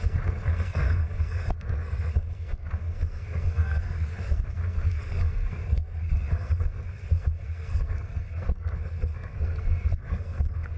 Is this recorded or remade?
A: remade